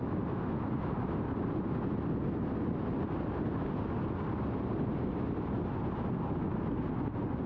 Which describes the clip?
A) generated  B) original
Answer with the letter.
B